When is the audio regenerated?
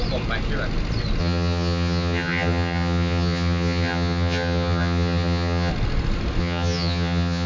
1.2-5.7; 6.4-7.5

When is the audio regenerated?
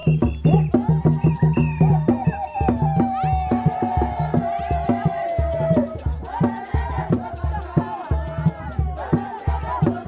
5.8-7.5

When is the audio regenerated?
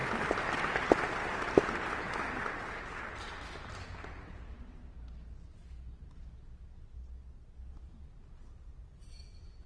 none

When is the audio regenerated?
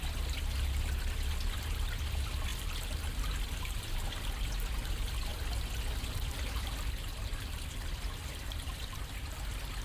none